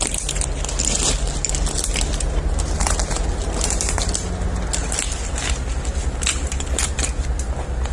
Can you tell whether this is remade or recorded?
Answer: recorded